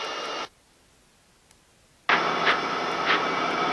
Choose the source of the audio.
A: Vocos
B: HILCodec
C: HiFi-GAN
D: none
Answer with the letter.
D